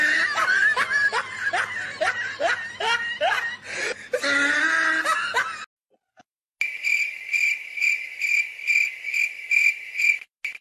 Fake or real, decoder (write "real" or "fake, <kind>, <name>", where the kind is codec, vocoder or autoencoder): real